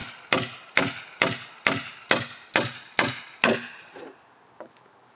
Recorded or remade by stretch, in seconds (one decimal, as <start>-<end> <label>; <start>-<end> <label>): 0.0-5.2 recorded